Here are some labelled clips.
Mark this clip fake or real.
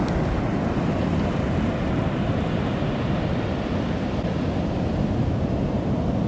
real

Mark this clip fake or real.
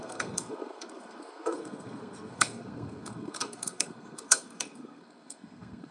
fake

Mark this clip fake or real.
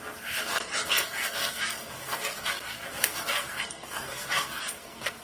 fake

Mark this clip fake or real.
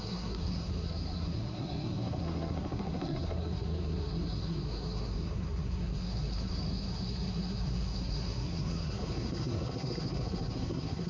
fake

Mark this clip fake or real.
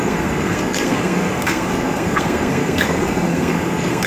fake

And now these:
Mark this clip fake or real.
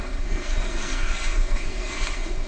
fake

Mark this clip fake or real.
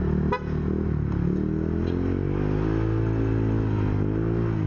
real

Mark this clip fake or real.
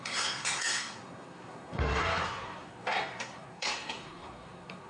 fake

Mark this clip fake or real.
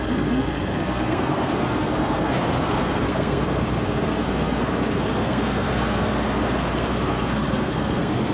fake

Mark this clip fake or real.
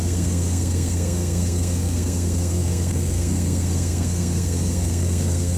fake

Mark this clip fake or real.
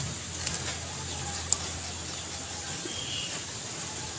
real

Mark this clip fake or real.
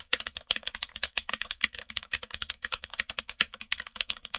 fake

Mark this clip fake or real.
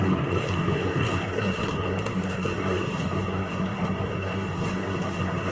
fake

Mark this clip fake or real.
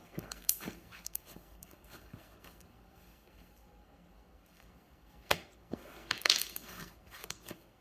fake